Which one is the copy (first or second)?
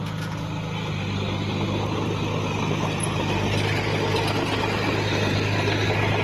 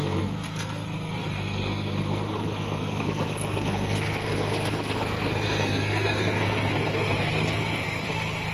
second